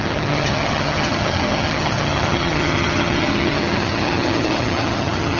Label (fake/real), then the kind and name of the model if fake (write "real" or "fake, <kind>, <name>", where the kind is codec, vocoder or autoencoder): fake, vocoder, HiFi-GAN